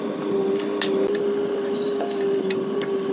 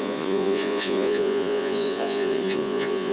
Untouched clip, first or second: first